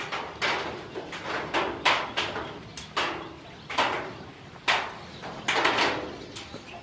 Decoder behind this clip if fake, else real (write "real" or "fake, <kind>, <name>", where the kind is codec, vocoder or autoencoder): real